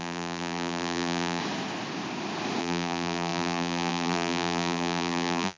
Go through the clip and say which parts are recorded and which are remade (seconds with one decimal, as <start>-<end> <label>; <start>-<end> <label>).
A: 0.0-1.4 remade; 1.4-2.6 recorded; 2.6-5.6 remade